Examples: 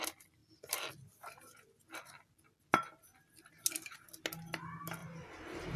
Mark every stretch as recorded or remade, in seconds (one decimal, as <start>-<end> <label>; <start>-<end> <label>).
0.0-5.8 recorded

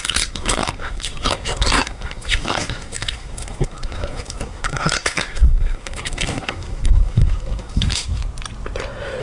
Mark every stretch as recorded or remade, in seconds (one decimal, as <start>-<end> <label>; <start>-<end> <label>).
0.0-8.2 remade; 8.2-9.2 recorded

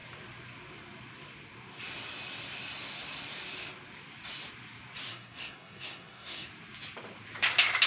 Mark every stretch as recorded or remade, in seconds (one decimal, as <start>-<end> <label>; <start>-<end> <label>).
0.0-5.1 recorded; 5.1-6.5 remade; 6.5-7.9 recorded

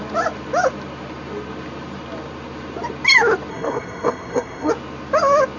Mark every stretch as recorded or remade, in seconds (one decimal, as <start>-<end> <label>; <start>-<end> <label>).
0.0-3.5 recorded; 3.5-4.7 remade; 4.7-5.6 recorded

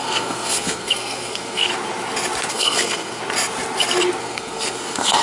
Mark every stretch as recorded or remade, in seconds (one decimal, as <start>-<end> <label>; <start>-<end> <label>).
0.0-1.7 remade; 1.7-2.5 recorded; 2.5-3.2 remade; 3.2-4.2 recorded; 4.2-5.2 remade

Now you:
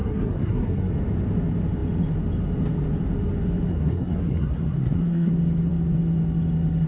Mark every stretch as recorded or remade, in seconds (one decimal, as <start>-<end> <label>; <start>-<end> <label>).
0.0-0.9 remade; 0.9-3.7 recorded; 3.7-5.3 remade; 5.3-6.9 recorded